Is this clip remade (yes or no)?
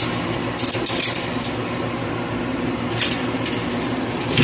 yes